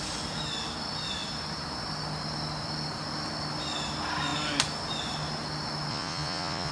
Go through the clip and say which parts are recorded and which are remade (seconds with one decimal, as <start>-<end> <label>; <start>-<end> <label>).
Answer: 0.0-5.9 recorded; 5.9-6.7 remade